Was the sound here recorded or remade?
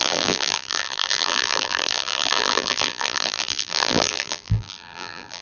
remade